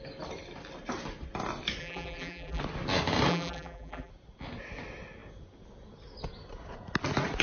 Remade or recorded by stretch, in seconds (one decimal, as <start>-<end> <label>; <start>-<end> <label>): 0.0-1.8 recorded; 1.8-2.6 remade; 2.6-3.3 recorded; 3.3-4.1 remade; 4.1-7.4 recorded